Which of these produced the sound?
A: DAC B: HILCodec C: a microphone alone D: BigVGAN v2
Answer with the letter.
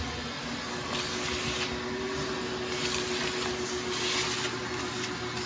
C